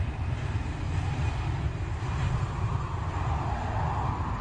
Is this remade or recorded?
recorded